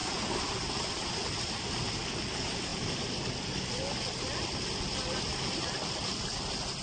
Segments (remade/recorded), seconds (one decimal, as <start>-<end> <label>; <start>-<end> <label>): 0.0-6.8 recorded